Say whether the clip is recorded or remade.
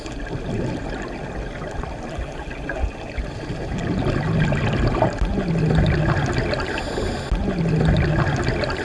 recorded